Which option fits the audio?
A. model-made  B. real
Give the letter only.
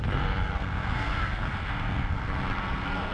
A